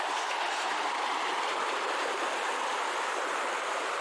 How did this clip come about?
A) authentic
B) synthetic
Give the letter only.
B